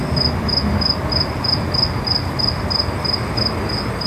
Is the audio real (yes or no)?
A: yes